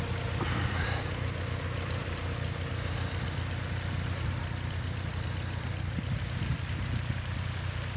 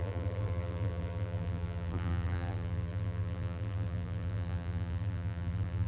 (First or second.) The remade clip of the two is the second